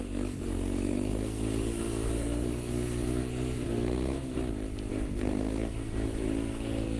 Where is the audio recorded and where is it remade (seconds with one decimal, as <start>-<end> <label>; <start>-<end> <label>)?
0.0-4.4 remade; 4.4-4.9 recorded; 4.9-7.0 remade